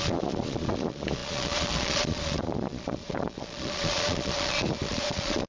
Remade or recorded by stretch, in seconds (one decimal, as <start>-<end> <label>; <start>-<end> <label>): 0.0-5.5 remade